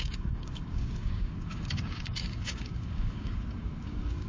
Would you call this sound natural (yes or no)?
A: no